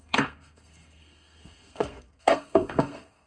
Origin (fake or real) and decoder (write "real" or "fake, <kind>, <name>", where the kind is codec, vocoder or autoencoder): fake, codec, SNAC